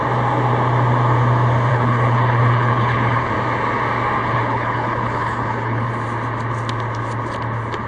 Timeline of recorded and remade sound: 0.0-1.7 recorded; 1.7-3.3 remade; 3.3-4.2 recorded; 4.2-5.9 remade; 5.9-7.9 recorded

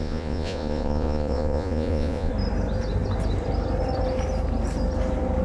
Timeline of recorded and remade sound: 0.0-2.3 remade; 2.3-5.4 recorded